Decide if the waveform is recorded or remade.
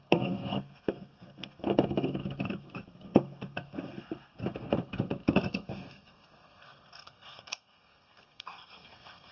remade